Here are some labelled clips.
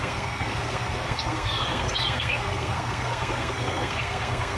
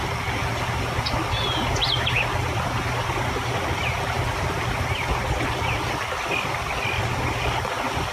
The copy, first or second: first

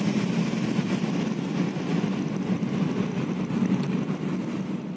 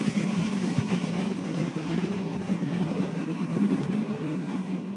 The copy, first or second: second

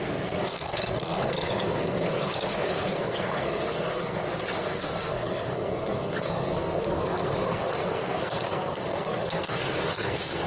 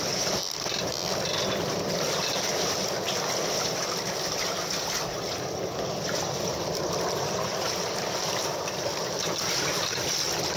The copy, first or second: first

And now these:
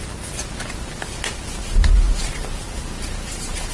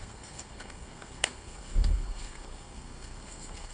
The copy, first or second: second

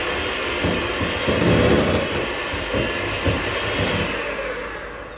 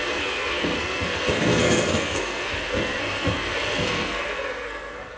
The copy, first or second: second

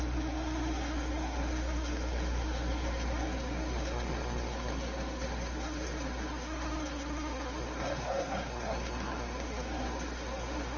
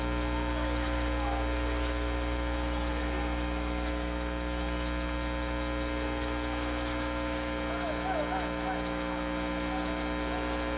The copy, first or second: first